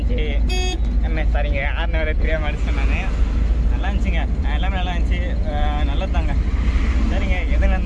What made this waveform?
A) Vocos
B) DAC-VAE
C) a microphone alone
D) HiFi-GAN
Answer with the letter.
C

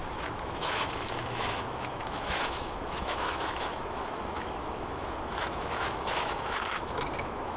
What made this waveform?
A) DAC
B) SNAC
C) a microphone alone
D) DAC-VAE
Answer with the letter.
D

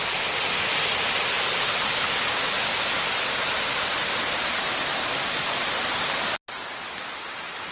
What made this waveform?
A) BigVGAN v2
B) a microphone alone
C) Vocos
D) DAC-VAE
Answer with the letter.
B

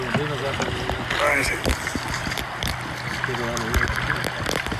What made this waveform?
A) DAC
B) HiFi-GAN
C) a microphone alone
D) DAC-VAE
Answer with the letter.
C